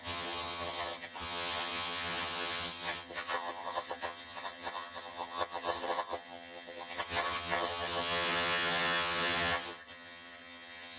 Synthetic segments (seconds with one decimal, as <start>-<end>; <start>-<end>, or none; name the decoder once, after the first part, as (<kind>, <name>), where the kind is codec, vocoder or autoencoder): 0.0-11.0 (vocoder, HiFi-GAN)